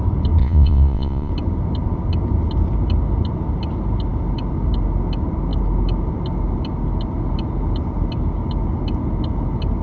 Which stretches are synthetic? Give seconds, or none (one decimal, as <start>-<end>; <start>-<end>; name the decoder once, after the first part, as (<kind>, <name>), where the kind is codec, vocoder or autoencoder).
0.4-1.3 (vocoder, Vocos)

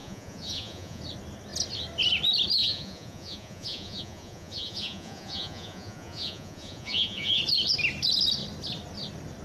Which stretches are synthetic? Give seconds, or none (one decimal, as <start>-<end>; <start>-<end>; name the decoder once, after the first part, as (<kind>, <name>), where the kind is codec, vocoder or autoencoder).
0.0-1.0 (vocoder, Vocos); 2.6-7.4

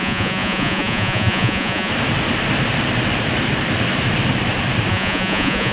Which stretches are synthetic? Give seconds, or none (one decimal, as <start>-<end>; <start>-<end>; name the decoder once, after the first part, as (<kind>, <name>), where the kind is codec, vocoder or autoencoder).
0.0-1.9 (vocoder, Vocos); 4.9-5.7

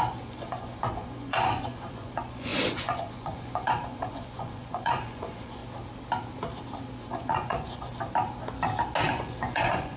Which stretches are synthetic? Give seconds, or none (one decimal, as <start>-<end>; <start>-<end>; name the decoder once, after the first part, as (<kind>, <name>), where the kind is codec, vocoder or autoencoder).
0.0-5.6 (vocoder, Vocos); 7.0-7.9; 9.1-10.0

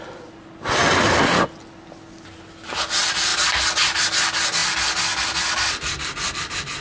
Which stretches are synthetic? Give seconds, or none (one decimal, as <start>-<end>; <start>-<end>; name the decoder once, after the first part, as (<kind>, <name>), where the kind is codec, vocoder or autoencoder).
none

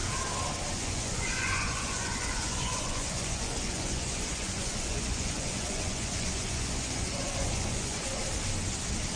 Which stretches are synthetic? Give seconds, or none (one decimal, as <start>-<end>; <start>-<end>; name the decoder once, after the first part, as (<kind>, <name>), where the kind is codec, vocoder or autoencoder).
0.7-8.2 (vocoder, Vocos)

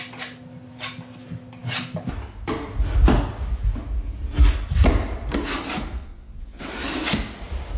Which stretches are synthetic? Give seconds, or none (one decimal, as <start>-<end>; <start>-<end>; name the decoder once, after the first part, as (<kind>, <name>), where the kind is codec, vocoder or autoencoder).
6.0-6.6 (vocoder, Vocos)

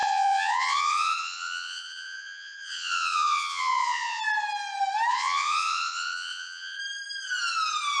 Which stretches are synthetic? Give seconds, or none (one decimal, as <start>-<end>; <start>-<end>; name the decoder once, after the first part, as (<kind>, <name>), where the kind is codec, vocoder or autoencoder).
0.0-4.2 (vocoder, Vocos); 5.1-6.8